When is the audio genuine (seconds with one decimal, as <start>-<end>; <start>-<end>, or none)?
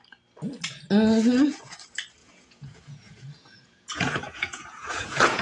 0.0-2.2